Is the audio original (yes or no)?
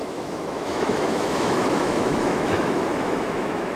no